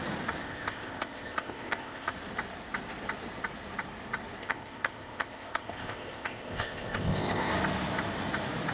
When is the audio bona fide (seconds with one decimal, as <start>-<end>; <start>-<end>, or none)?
0.0-0.4; 2.1-4.4; 7.5-8.7